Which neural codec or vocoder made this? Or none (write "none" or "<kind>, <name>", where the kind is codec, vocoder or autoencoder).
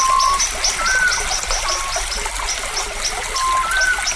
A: none